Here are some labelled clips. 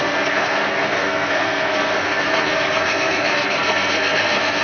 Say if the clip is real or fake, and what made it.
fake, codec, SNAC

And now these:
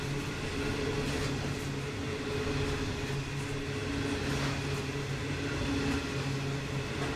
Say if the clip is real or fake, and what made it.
real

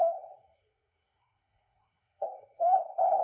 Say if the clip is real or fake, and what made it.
fake, codec, SNAC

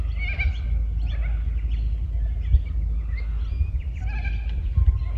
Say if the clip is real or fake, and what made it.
real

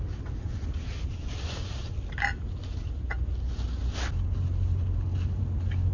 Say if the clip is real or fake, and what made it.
real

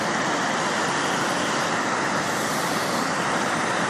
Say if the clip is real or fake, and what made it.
real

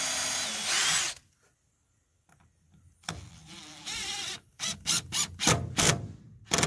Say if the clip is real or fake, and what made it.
real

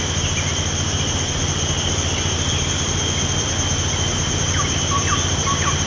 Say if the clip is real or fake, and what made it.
real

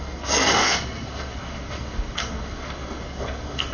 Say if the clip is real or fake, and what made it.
fake, codec, SNAC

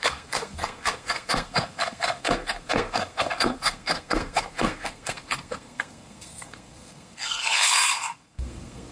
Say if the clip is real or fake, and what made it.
fake, codec, SNAC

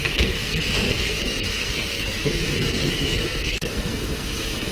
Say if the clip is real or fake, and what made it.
fake, codec, SNAC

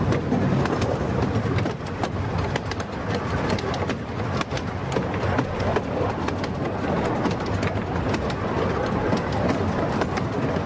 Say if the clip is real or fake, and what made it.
real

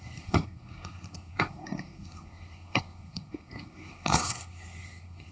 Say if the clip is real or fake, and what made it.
fake, codec, SNAC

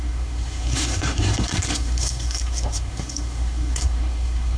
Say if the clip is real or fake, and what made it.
fake, codec, SNAC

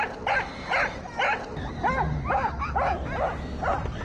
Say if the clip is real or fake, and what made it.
real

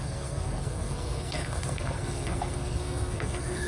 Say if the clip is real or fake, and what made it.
fake, codec, SNAC